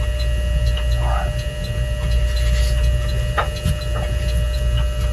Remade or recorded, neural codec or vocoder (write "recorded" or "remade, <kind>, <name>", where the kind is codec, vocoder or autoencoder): recorded